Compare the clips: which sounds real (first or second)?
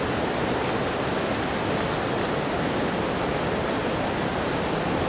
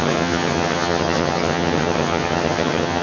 first